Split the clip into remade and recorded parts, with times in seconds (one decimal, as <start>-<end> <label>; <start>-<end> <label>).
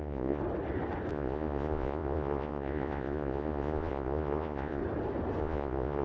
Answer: 0.0-0.4 remade; 0.4-1.1 recorded; 1.1-4.8 remade; 4.8-5.4 recorded; 5.4-6.0 remade